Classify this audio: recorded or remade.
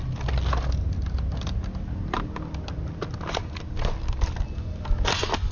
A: recorded